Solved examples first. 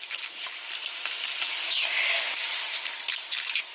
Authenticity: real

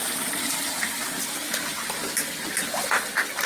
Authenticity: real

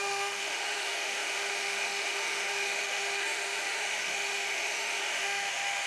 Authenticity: fake